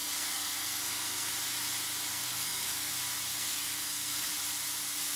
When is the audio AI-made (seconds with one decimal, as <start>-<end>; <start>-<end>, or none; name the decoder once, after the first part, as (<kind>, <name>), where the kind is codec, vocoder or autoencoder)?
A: 0.0-1.3 (codec, SNAC); 2.1-2.9; 3.3-4.3